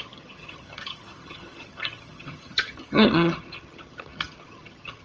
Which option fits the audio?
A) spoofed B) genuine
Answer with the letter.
A